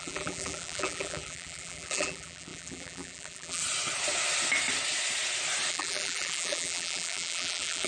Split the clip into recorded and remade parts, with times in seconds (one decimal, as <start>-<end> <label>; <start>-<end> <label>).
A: 0.0-3.6 remade; 3.6-5.7 recorded; 5.7-7.9 remade